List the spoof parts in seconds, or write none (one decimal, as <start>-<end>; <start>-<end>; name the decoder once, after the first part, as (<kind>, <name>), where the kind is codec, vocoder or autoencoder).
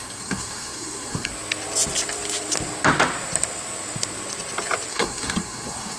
0.0-1.3 (codec, SNAC); 4.9-6.0